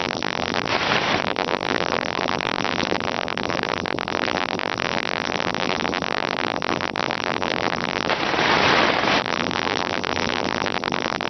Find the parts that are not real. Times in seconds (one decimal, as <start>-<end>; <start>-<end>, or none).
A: 0.0-0.7; 1.2-8.1; 9.2-11.3